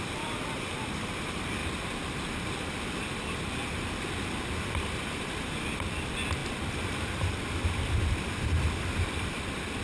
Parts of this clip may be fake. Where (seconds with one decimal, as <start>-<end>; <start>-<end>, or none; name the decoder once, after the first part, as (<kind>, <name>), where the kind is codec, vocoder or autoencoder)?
0.0-1.6 (vocoder, BigVGAN v2); 4.4-9.8